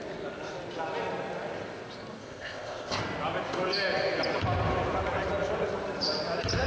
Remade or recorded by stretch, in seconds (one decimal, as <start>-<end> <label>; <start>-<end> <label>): 0.0-2.2 recorded; 2.2-3.0 remade; 3.0-6.7 recorded

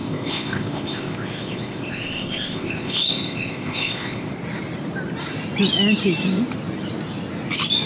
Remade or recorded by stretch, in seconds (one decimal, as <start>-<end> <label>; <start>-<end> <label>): 0.0-4.3 remade; 4.3-7.9 recorded